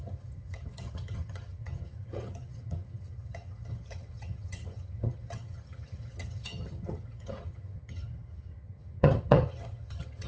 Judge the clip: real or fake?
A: fake